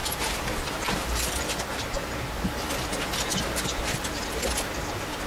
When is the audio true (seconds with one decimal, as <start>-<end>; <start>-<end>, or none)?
1.5-5.3